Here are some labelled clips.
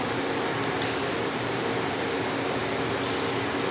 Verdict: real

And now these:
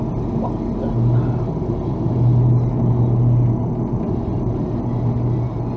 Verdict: real